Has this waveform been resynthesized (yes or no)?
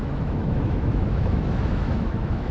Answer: yes